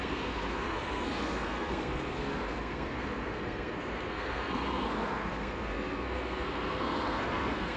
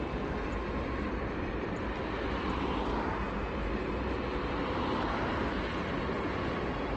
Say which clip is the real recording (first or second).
second